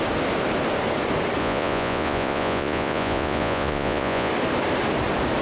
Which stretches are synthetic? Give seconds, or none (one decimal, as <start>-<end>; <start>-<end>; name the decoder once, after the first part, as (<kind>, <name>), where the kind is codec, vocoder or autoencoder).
1.4-4.3 (vocoder, Vocos)